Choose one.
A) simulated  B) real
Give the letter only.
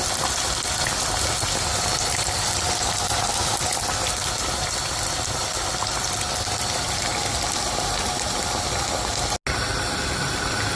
B